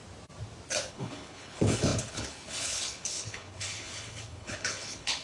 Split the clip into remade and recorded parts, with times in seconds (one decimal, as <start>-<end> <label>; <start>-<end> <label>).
0.0-0.9 recorded; 0.9-5.2 remade

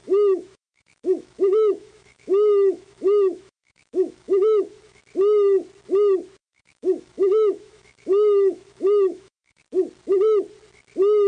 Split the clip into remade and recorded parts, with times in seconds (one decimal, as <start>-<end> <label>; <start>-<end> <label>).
0.0-5.0 remade; 5.0-6.4 recorded; 6.4-9.6 remade; 9.6-11.3 recorded

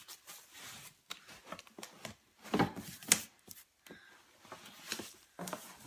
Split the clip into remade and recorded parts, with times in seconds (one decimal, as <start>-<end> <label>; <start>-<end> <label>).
0.0-4.9 recorded; 4.9-5.9 remade

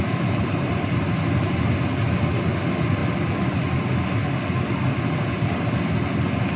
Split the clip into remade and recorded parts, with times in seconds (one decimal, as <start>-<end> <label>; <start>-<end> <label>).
0.0-6.6 recorded

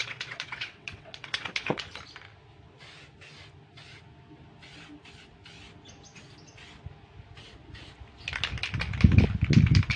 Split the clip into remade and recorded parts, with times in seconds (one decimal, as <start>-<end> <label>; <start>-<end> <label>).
0.0-2.0 remade; 2.0-10.0 recorded

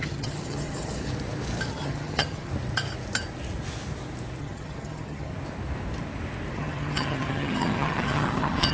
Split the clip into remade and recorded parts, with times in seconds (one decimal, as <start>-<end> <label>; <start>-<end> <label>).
0.0-1.1 remade; 1.1-1.7 recorded; 1.7-2.5 remade; 2.5-4.4 recorded; 4.4-5.3 remade; 5.3-6.5 recorded; 6.5-8.7 remade

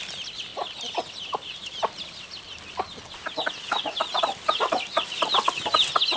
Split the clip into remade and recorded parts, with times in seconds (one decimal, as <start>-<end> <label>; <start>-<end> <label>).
0.0-6.2 recorded

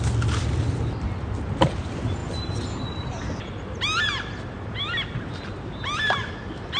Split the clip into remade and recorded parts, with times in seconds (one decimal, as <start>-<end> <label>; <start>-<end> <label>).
0.0-6.8 recorded